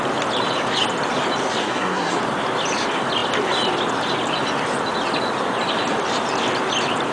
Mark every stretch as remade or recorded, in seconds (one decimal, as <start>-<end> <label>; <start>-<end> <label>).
0.0-1.6 recorded; 1.6-2.2 remade; 2.2-7.1 recorded